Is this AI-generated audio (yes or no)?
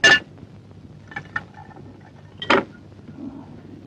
no